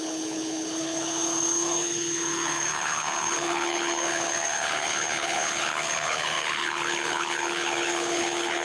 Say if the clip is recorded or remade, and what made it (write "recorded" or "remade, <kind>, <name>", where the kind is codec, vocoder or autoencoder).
remade, codec, HILCodec